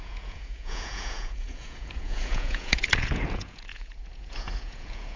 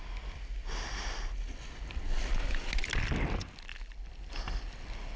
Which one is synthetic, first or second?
first